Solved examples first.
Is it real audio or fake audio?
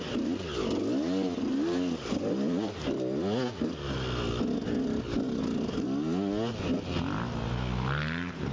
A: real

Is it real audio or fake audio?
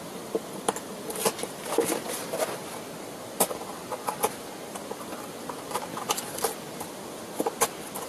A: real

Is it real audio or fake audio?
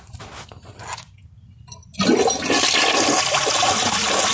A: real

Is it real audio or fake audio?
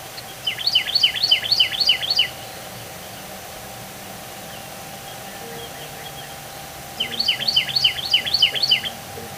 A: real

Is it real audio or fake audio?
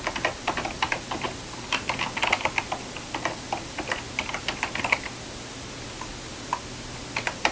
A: real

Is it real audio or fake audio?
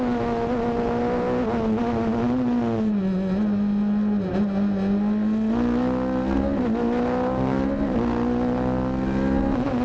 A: real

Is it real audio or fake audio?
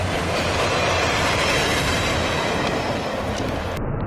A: fake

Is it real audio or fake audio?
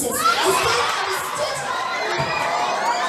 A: fake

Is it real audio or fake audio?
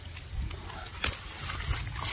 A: real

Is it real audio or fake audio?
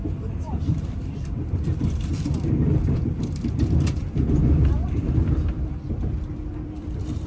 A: fake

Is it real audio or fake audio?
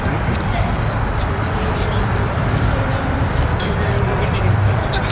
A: fake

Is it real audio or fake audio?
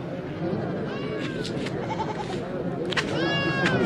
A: real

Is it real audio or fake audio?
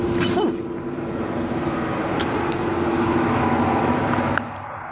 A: fake